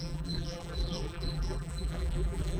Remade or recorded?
remade